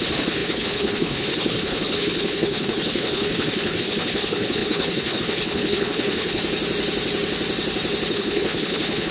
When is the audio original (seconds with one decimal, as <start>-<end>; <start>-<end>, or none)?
6.4-8.1

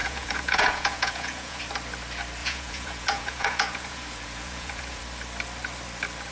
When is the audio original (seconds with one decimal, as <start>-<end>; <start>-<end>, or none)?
1.6-2.4; 5.0-6.3

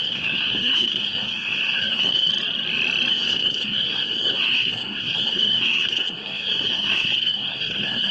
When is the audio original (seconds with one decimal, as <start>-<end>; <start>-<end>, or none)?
2.3-3.1

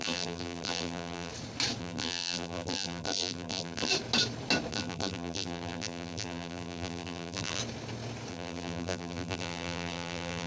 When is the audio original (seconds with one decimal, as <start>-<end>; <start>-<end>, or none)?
1.3-1.8; 3.9-4.7; 7.6-8.3

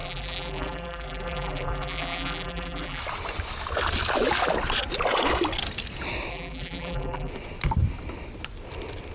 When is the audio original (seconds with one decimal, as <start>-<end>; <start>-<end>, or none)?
3.0-6.3; 7.3-9.1

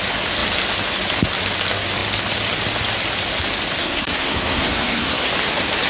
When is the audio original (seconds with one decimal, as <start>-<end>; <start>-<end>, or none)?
0.0-3.8; 5.3-5.9